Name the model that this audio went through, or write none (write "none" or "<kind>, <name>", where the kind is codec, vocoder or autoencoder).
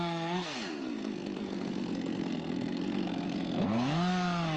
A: codec, SNAC